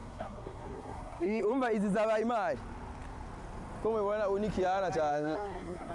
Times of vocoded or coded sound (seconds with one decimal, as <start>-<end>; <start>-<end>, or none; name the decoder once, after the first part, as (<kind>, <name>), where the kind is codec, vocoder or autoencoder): 0.0-1.4 (codec, SNAC); 5.1-5.9

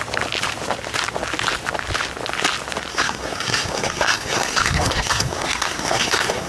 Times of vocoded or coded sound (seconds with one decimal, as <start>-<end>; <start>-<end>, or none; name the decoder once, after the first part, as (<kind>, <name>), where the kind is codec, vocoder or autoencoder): 2.9-6.5 (codec, SNAC)

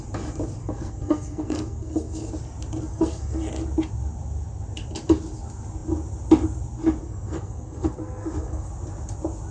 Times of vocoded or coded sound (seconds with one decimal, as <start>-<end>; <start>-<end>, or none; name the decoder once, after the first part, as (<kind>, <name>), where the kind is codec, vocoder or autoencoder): 0.6-2.3 (codec, SNAC); 2.9-3.5; 7.0-8.7

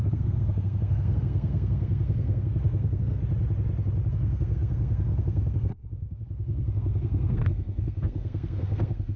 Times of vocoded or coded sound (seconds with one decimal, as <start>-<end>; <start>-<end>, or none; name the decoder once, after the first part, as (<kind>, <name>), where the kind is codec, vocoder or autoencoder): 0.0-3.2 (codec, SNAC); 4.1-9.2

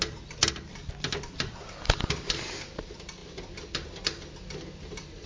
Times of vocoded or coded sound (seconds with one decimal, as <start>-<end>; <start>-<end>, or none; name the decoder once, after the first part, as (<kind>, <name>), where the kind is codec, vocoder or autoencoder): none

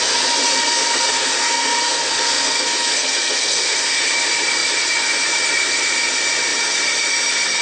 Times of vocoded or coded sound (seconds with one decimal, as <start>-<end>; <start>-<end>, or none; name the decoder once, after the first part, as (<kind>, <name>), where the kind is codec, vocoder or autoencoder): 0.4-4.1 (codec, SNAC)